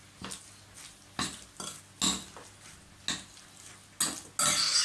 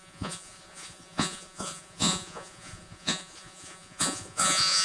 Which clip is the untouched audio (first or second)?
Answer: first